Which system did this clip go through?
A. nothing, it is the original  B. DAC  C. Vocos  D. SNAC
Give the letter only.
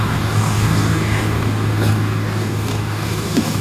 B